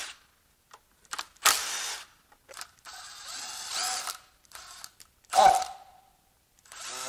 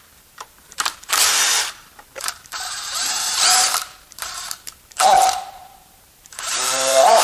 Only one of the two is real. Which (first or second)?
first